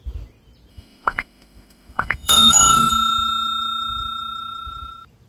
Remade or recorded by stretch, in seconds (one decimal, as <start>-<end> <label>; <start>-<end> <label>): 0.0-0.7 recorded; 0.7-2.9 remade; 2.9-5.3 recorded